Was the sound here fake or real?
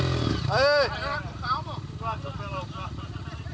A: real